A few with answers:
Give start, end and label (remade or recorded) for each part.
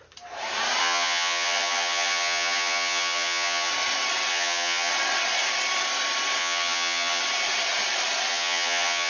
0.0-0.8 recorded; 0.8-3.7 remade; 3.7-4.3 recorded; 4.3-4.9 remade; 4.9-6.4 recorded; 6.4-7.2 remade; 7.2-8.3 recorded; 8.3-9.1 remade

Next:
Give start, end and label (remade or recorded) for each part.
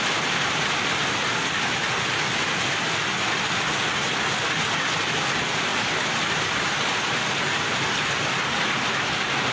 0.0-9.5 recorded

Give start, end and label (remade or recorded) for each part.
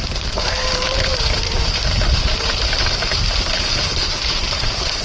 0.0-5.0 remade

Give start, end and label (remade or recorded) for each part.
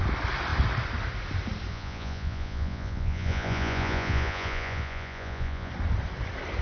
0.0-1.7 recorded; 1.7-5.7 remade; 5.7-6.6 recorded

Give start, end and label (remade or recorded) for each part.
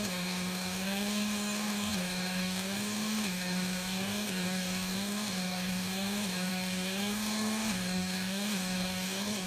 0.0-9.5 remade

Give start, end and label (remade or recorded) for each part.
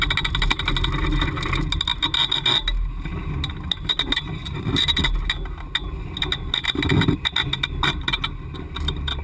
0.0-4.4 recorded; 4.4-5.0 remade; 5.0-9.2 recorded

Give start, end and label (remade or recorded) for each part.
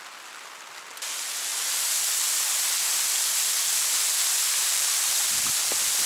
0.0-4.6 recorded; 4.6-5.2 remade; 5.2-6.1 recorded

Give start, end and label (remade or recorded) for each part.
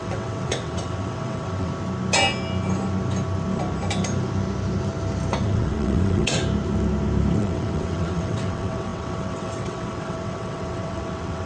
0.0-1.7 remade; 1.7-5.4 recorded; 5.4-6.4 remade; 6.4-7.4 recorded; 7.4-11.5 remade